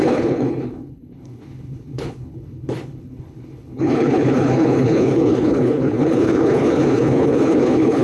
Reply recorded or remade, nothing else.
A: remade